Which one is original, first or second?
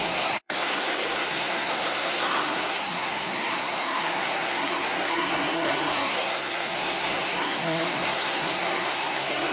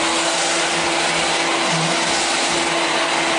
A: second